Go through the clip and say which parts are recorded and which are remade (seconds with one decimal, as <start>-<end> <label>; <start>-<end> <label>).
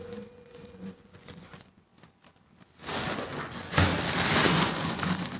0.0-1.9 remade; 1.9-3.0 recorded; 3.0-3.9 remade; 3.9-4.5 recorded; 4.5-5.4 remade